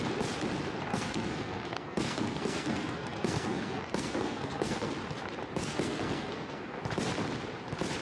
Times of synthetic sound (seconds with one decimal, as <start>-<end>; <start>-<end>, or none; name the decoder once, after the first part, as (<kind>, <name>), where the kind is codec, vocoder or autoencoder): 0.9-4.9 (codec, SNAC); 5.6-6.8